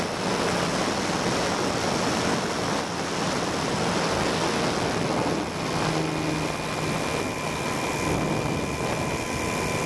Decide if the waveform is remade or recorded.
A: recorded